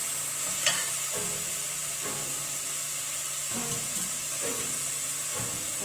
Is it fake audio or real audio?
real